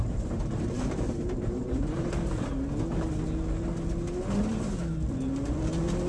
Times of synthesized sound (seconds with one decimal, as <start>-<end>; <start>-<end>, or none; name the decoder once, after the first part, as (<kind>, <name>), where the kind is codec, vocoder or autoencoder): 0.0-2.1 (vocoder, BigVGAN v2)